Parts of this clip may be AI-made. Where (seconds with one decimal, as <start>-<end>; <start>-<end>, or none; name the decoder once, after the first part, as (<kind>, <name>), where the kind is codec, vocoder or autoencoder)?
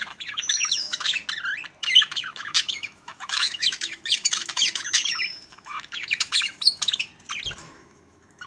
0.0-1.2 (autoencoder, DAC-VAE); 1.8-7.1; 7.6-8.5